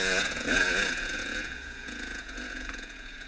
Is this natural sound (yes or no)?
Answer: no